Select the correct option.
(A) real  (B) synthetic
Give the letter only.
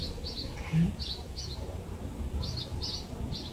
A